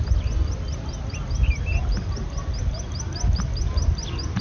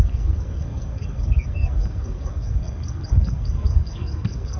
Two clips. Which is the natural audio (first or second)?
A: first